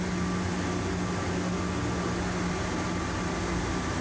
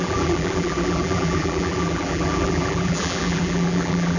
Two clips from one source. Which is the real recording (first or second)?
first